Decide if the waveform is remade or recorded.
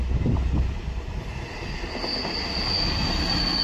recorded